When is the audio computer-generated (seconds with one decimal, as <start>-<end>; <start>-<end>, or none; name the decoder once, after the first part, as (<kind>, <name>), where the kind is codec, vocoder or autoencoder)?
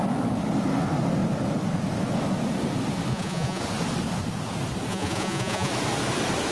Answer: 3.1-3.6 (vocoder, Vocos); 4.9-5.7